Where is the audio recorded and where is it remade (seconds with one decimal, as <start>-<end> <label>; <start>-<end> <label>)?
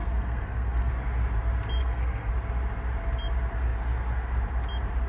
0.0-0.9 remade; 0.9-1.8 recorded; 1.8-2.3 remade; 2.3-5.1 recorded